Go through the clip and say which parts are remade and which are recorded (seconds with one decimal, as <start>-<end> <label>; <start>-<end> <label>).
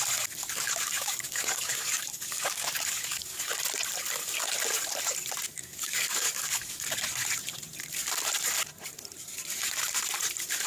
0.0-0.4 recorded; 0.4-3.4 remade; 3.4-5.6 recorded; 5.6-7.0 remade; 7.0-10.7 recorded